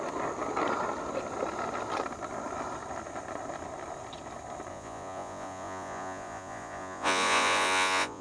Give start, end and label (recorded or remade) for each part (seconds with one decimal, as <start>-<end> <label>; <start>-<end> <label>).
0.0-4.7 recorded; 4.7-8.2 remade

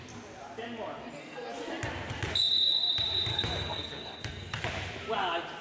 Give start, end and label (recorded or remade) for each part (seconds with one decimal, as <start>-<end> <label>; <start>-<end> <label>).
0.0-1.2 recorded; 1.2-1.7 remade; 1.7-3.3 recorded; 3.3-4.6 remade; 4.6-5.6 recorded

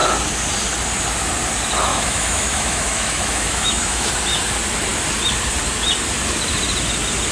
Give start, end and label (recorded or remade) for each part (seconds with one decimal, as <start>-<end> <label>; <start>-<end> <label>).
0.0-1.9 recorded; 1.9-4.1 remade; 4.1-7.3 recorded

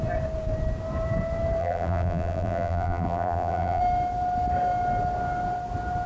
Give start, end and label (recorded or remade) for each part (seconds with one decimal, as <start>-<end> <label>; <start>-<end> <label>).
0.0-1.6 recorded; 1.6-3.8 remade; 3.8-6.1 recorded